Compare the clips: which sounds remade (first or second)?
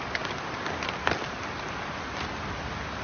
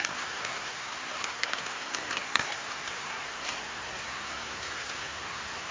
second